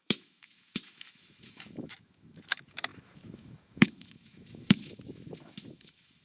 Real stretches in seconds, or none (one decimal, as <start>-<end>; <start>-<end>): none